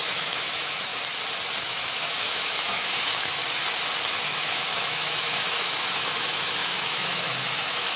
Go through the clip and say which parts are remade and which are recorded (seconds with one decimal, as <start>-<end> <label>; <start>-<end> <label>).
0.0-0.9 remade; 0.9-1.6 recorded; 1.6-3.4 remade; 3.4-4.1 recorded; 4.1-8.0 remade